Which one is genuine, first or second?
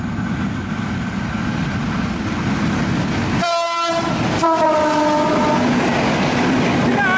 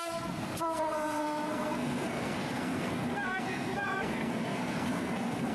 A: first